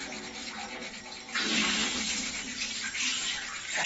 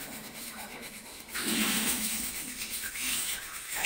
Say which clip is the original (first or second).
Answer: first